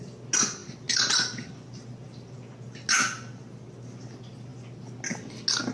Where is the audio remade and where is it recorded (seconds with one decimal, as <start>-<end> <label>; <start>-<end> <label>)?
0.0-5.7 recorded